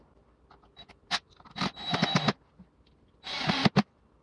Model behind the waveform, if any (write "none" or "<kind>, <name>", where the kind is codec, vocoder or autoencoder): none